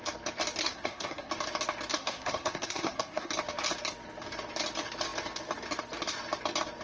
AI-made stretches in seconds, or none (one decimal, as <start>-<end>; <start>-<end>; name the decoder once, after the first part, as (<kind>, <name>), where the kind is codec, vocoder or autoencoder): 0.6-1.3 (codec, SNAC); 1.9-3.3